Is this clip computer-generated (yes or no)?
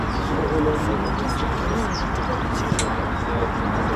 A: no